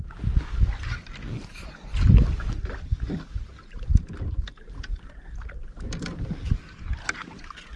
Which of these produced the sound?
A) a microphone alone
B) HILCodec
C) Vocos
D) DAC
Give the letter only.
A